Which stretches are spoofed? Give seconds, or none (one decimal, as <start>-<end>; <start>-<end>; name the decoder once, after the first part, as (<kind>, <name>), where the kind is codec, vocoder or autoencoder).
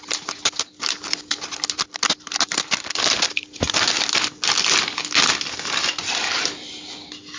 none